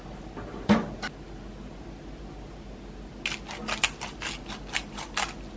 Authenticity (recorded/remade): recorded